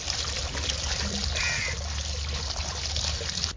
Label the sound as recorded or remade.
recorded